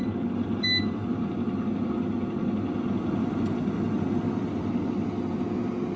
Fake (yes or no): no